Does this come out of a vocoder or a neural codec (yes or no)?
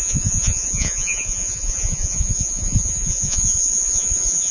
yes